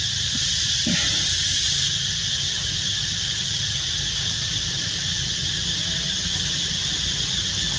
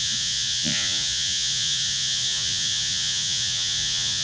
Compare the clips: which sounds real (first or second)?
first